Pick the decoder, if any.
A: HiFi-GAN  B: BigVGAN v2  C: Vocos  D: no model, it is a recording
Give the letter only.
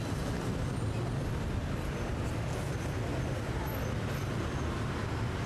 D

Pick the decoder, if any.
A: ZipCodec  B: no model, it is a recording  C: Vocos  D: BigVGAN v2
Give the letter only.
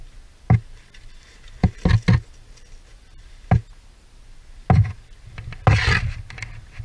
B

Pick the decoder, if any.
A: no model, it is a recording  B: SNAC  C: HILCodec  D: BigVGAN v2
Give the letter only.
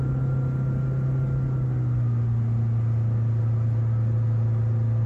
A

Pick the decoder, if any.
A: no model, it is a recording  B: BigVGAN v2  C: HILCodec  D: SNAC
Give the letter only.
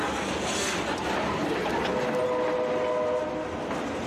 A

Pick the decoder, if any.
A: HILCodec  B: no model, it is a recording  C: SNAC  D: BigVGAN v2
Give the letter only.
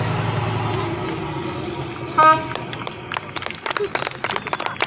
B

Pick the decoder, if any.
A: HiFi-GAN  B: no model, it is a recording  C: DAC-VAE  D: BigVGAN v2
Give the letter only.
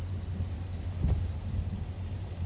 B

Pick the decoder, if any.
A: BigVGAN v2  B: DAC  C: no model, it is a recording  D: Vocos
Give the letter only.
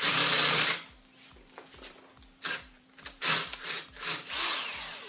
C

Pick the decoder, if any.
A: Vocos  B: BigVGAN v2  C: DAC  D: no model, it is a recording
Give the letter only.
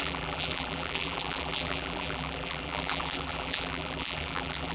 B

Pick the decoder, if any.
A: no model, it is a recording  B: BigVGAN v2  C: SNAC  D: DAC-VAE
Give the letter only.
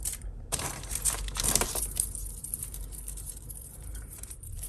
B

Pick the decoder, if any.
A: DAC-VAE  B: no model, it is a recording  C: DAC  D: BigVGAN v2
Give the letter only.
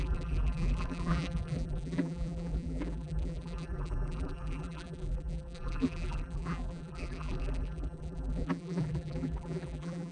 D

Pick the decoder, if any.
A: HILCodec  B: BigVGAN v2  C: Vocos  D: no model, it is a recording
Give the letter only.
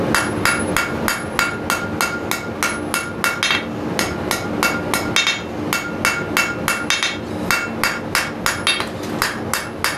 D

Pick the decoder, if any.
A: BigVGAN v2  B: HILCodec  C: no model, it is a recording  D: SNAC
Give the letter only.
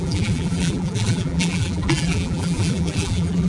A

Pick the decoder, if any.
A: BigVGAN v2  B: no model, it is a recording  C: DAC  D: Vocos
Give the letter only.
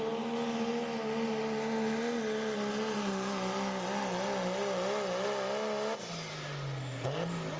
B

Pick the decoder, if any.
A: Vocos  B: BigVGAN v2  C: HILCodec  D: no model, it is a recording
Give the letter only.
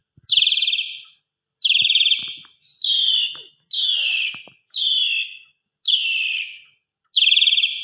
D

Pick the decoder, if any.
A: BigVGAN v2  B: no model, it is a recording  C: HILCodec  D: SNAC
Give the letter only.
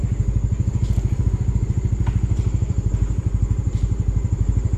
B